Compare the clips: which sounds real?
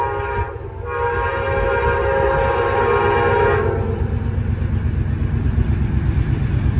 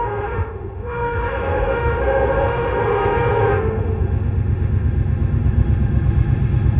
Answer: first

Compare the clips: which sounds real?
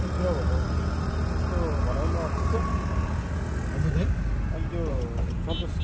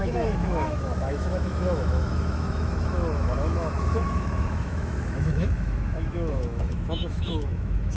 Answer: first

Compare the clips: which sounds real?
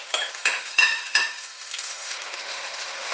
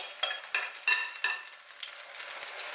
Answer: second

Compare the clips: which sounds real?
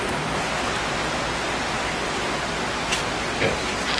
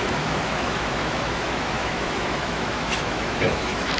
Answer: first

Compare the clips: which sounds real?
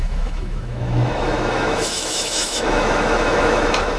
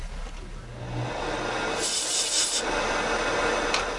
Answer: second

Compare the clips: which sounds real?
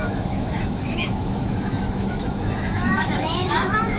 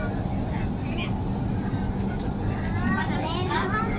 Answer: second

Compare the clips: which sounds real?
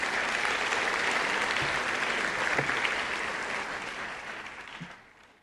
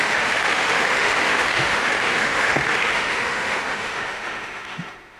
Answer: first